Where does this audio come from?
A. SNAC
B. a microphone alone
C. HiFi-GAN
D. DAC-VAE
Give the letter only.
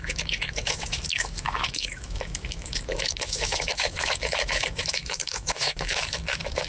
D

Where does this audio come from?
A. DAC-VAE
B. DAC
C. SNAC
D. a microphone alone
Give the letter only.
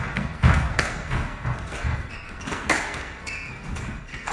C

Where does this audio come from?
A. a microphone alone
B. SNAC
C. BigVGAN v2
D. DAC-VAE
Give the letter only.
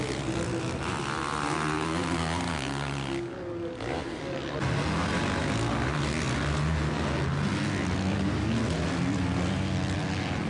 A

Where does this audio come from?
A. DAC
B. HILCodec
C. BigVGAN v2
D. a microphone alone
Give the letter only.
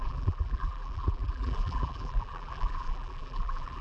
C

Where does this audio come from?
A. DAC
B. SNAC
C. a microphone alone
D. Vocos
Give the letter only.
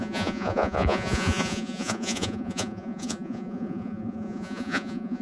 D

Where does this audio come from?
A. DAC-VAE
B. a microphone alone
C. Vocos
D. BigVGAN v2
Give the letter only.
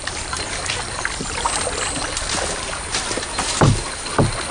B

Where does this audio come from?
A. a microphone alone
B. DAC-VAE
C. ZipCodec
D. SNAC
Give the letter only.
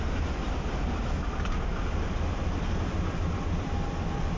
A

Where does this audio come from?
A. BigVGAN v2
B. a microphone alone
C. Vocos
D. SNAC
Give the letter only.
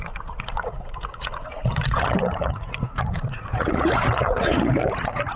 C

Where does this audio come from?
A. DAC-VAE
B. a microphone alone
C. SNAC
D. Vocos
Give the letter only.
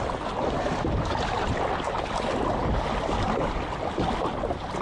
B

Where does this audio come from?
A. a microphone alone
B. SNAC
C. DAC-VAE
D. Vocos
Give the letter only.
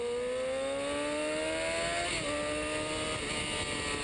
A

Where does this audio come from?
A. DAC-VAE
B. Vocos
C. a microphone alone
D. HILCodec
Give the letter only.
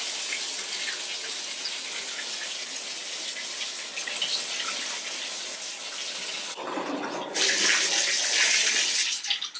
C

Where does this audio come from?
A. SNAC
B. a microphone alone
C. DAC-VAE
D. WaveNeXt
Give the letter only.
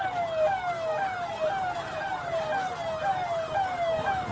B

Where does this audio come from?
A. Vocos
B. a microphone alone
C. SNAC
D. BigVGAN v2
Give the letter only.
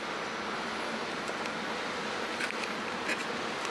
B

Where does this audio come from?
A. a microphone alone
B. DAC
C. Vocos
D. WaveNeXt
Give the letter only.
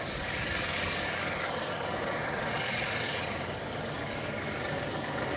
B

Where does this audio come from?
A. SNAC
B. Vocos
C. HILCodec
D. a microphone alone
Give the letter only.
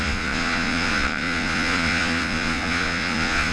B